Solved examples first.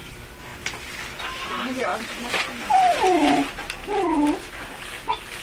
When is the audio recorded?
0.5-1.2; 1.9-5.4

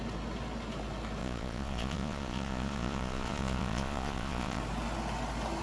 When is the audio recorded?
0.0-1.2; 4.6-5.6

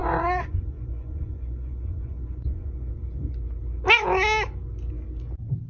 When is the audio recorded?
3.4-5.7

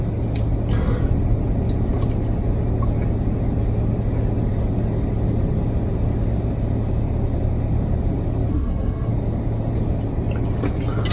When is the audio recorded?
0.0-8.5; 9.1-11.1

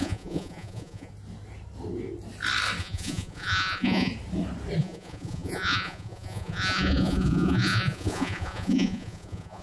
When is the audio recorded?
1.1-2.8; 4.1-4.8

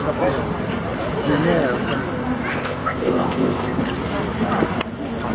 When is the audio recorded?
0.0-2.5; 3.8-5.3

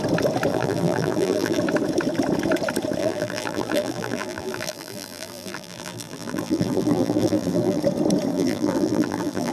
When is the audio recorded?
0.0-0.5; 1.6-3.0; 7.8-8.3